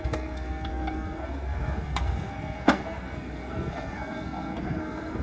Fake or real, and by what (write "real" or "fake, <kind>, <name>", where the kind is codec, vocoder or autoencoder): fake, codec, SNAC